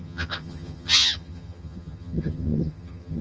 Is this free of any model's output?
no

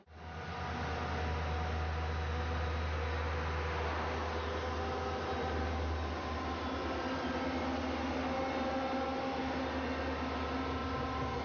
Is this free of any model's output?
yes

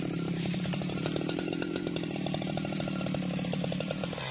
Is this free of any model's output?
no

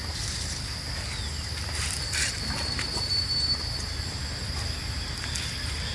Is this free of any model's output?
yes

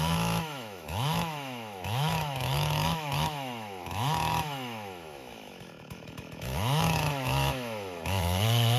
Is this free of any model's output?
no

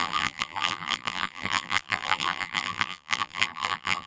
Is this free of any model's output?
no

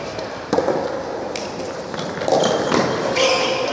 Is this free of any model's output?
yes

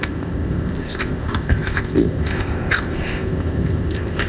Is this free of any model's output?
no